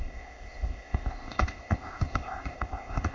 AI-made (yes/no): yes